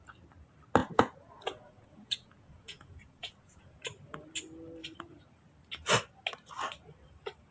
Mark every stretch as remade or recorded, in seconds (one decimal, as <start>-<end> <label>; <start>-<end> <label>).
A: 0.0-0.8 recorded; 0.8-3.8 remade; 3.8-7.5 recorded